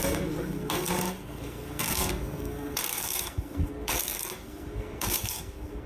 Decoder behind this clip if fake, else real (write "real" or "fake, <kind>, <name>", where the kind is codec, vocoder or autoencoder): fake, codec, SNAC